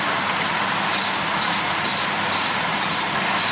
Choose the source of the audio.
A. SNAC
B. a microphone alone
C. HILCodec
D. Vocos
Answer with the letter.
B